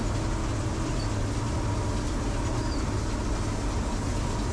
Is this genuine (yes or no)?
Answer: yes